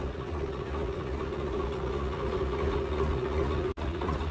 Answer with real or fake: fake